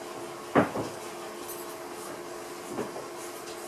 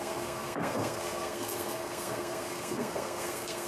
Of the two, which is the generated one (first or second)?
second